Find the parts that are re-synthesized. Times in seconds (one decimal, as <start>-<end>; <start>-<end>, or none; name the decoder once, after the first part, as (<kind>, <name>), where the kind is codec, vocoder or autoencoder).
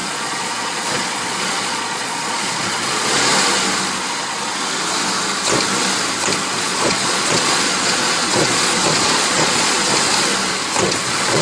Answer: 0.0-3.3 (vocoder, Vocos); 6.6-9.9; 10.8-11.4